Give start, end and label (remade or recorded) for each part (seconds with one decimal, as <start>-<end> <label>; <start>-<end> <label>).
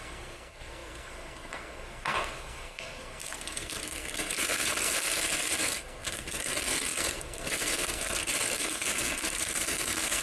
0.0-10.2 remade